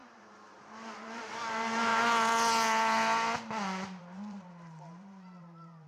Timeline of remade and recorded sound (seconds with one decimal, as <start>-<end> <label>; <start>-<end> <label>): 0.0-1.9 remade; 1.9-4.0 recorded; 4.0-5.9 remade